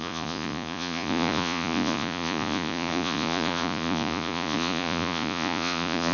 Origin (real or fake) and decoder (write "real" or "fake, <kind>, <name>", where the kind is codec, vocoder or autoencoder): fake, vocoder, Vocos